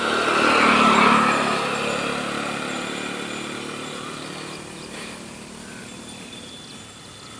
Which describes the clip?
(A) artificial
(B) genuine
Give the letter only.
B